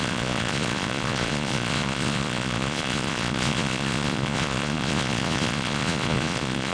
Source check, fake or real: fake